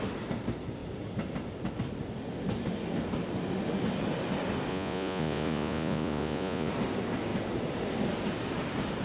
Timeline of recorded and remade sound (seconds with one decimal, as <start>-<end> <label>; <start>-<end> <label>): 0.0-4.7 recorded; 4.7-6.7 remade; 6.7-9.0 recorded